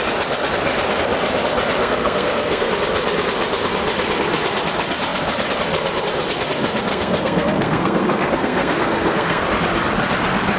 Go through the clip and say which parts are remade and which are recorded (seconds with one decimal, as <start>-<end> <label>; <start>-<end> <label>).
0.0-1.8 recorded; 1.8-2.7 remade; 2.7-6.9 recorded; 6.9-9.4 remade; 9.4-10.6 recorded